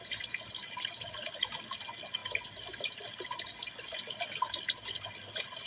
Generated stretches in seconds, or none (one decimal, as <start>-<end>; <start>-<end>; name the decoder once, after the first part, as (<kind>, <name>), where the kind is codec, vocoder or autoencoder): none